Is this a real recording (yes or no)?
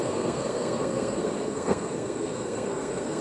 no